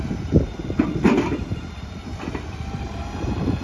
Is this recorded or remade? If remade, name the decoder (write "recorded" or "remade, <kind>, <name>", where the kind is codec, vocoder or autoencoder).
recorded